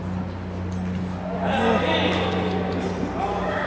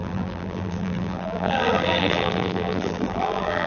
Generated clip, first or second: second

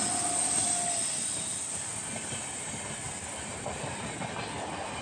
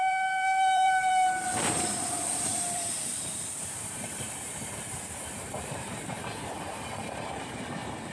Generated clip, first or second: second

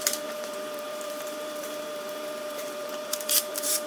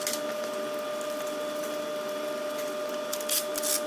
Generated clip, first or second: first